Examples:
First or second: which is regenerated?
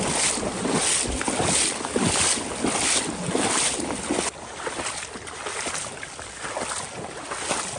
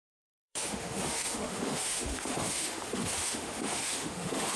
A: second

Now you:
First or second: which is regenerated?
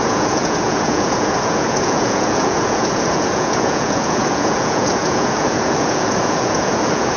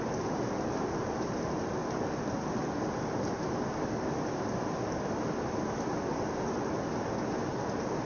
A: first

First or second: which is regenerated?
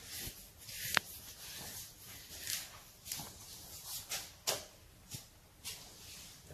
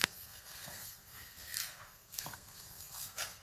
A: second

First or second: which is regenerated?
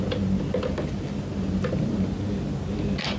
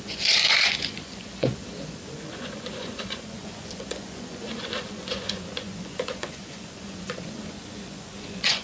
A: second